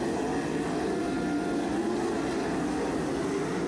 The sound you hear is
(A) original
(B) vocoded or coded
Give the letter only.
A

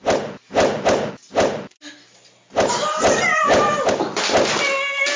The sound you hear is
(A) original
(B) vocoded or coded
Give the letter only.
A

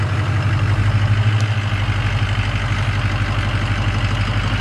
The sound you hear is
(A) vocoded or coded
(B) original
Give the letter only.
B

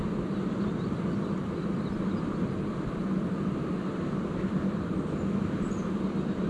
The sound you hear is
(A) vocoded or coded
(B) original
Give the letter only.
B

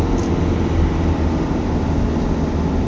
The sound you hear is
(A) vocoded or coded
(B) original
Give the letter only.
B